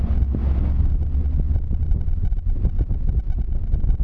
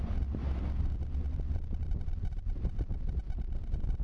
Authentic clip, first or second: first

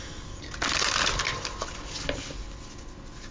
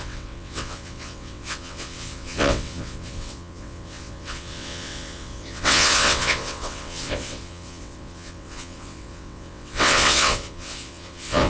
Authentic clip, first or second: first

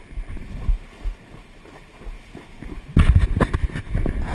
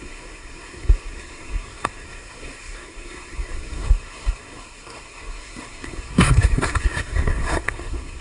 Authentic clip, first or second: first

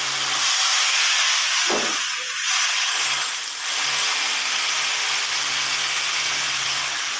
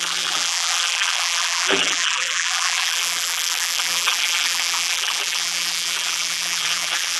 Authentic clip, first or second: first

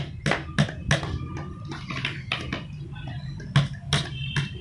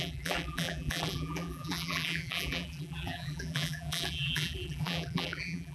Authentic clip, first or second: first